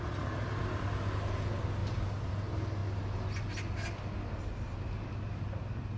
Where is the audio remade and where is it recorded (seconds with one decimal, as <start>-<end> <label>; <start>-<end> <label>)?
0.0-6.0 recorded

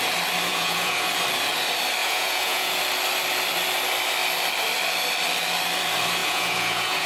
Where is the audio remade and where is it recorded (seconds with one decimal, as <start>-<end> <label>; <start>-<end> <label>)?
0.0-0.5 recorded; 0.5-1.1 remade; 1.1-2.0 recorded; 2.0-2.8 remade; 2.8-6.2 recorded; 6.2-7.1 remade

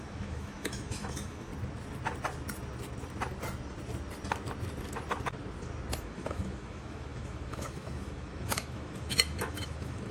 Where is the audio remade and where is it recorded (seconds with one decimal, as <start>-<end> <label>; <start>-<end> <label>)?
0.0-1.5 remade; 1.5-6.0 recorded; 6.0-10.1 remade

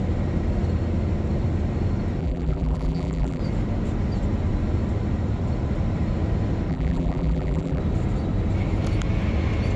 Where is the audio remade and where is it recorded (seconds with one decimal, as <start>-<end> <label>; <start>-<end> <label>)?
0.0-2.2 recorded; 2.2-3.4 remade; 3.4-6.7 recorded; 6.7-7.8 remade; 7.8-9.8 recorded

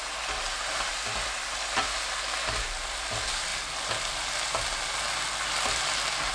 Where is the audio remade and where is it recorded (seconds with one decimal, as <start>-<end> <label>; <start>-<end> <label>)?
0.0-6.3 recorded

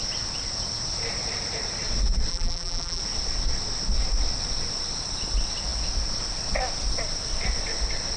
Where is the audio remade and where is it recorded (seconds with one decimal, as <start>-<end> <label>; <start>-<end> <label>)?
0.0-2.3 recorded; 2.3-3.0 remade; 3.0-8.2 recorded

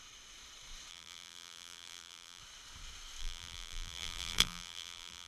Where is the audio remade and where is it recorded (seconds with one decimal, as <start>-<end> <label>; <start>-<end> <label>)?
0.0-0.9 recorded; 0.9-2.4 remade; 2.4-3.2 recorded; 3.2-5.3 remade